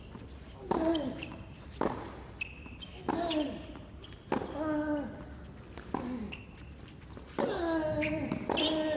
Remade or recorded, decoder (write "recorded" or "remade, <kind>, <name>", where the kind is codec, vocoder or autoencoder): recorded